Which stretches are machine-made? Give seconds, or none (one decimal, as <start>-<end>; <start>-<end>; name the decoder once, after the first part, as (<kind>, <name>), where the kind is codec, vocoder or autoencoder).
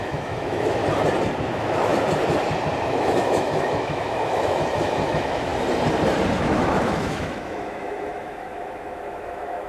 0.0-0.8 (autoencoder, DAC-VAE); 1.4-1.9; 2.9-5.5; 6.4-9.7